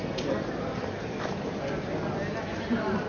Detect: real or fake real